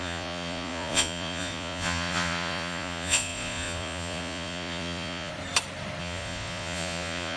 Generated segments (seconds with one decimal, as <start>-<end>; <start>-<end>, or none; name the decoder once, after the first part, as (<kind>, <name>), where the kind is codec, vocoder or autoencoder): 0.0-5.3 (vocoder, Vocos); 6.0-7.4